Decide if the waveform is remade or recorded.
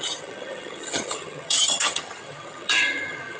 remade